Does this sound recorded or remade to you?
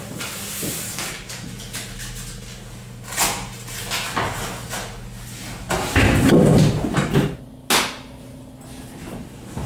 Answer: recorded